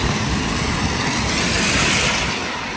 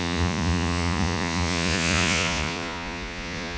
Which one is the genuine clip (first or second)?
first